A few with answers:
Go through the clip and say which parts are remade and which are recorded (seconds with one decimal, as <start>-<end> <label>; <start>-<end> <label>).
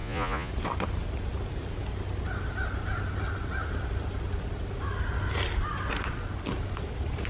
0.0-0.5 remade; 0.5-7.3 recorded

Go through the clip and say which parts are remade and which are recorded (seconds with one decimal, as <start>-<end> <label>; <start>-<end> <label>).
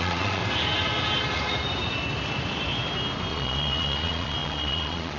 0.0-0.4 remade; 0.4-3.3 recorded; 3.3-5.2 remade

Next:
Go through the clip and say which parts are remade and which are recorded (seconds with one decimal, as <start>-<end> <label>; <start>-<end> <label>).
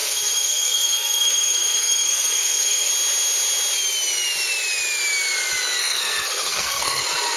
0.0-2.9 remade; 2.9-5.8 recorded; 5.8-7.0 remade; 7.0-7.4 recorded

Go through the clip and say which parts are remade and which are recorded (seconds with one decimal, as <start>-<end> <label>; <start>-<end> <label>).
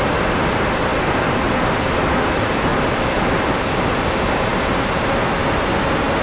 0.0-0.9 recorded; 0.9-1.4 remade; 1.4-2.7 recorded; 2.7-3.9 remade; 3.9-6.2 recorded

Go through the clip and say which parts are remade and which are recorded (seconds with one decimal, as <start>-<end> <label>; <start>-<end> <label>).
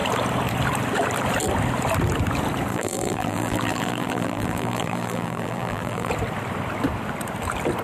0.0-2.7 recorded; 2.7-6.1 remade; 6.1-7.8 recorded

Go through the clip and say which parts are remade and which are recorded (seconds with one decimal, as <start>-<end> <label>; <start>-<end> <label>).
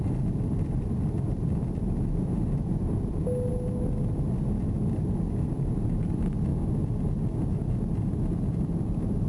0.0-3.5 remade; 3.5-4.8 recorded; 4.8-6.5 remade; 6.5-9.3 recorded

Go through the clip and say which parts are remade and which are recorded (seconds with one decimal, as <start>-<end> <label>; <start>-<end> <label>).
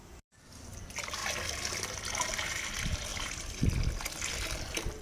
0.0-1.2 remade; 1.2-2.4 recorded; 2.4-5.0 remade